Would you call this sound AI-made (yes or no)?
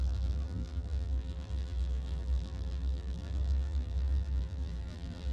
yes